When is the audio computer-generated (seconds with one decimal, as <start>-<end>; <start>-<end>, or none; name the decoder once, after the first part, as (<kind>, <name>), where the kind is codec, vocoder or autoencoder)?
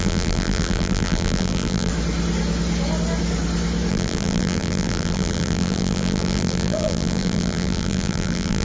0.0-1.9 (vocoder, BigVGAN v2); 3.9-8.6